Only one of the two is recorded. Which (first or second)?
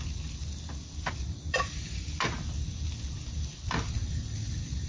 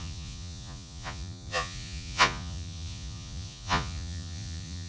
first